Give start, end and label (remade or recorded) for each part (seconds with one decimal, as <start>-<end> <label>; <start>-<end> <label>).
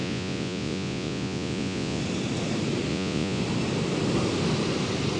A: 0.0-2.0 remade; 2.0-2.9 recorded; 2.9-3.4 remade; 3.4-5.2 recorded